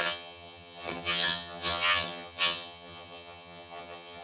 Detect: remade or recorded remade